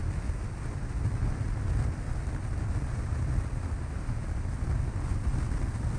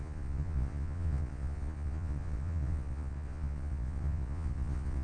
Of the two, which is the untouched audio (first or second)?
first